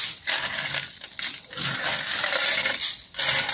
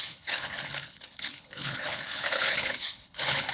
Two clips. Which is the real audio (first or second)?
first